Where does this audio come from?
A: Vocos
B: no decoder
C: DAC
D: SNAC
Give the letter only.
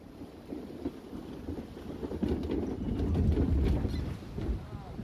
B